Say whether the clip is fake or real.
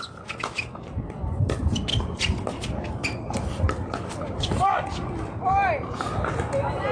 real